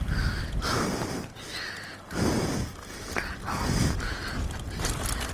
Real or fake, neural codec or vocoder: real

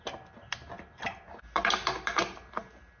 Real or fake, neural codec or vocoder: real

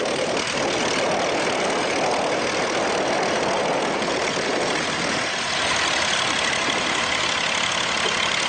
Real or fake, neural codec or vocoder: real